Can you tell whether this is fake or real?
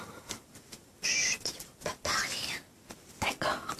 real